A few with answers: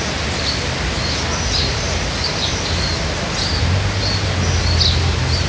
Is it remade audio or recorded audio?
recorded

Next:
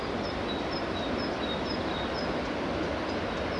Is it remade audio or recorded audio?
recorded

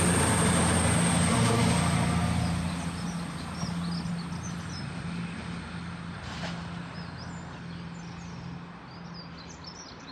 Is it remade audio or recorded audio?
recorded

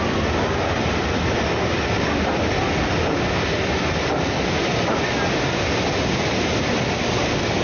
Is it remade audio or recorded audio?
recorded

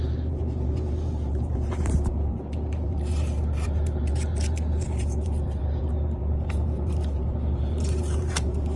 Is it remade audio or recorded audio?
remade